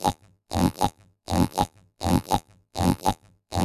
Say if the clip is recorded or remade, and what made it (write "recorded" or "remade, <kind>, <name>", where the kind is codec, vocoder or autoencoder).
remade, vocoder, BigVGAN v2